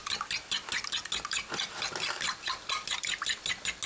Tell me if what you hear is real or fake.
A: real